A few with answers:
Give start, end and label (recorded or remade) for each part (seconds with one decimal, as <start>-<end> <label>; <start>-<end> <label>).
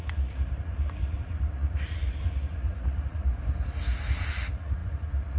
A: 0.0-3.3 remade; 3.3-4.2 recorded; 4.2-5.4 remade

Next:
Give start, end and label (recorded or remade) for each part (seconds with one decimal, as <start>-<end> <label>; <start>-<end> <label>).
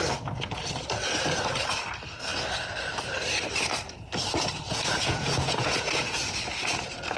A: 0.0-4.7 recorded; 4.7-6.2 remade; 6.2-7.2 recorded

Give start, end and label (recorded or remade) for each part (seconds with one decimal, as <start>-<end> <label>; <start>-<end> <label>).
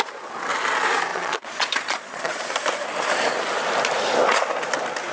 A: 0.0-1.1 recorded; 1.1-2.5 remade; 2.5-5.1 recorded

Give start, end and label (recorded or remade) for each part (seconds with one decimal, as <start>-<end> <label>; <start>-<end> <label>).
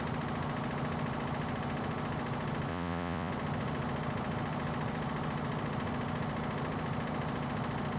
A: 0.0-2.7 recorded; 2.7-3.3 remade; 3.3-8.0 recorded